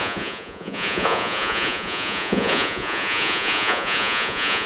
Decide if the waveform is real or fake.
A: fake